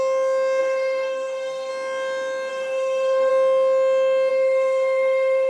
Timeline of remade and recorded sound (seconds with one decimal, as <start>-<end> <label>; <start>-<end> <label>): 0.0-0.6 recorded; 0.6-1.7 remade; 1.7-2.5 recorded; 2.5-3.3 remade; 3.3-4.3 recorded; 4.3-5.5 remade